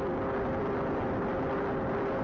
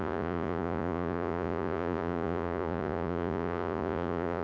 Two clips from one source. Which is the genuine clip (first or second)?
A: first